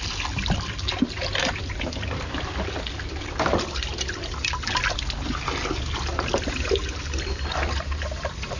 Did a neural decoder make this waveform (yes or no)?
no